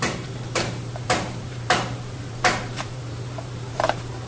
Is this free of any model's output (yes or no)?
no